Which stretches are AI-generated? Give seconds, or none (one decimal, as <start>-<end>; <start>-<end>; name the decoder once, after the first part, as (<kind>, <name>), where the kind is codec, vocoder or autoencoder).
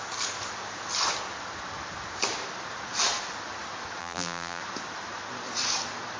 4.0-4.6 (vocoder, BigVGAN v2)